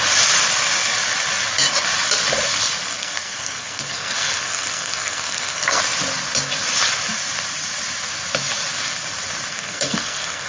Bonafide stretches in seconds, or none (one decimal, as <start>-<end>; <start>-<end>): 0.0-2.9; 5.8-9.5